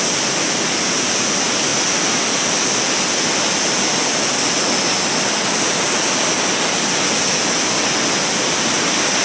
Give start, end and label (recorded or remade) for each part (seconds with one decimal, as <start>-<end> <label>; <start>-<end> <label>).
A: 0.0-9.2 recorded